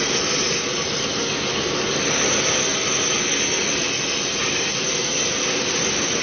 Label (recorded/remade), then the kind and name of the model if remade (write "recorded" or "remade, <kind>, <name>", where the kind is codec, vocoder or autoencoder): recorded